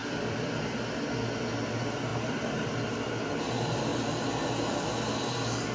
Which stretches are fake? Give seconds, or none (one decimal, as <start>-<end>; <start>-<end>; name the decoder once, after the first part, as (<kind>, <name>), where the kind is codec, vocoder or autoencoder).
0.0-0.6 (vocoder, BigVGAN v2); 2.1-3.3